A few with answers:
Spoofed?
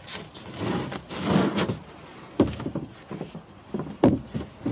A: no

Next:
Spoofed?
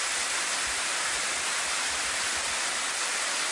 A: no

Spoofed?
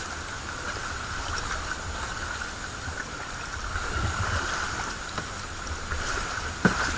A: no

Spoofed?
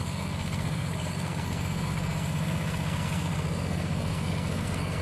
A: yes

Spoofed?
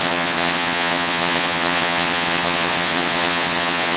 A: yes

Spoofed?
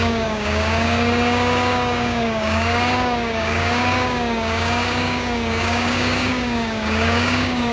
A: yes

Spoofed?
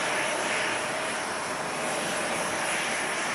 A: no